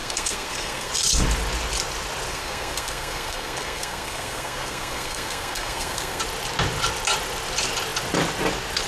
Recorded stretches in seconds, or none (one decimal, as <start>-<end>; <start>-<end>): 0.9-2.3; 6.2-8.9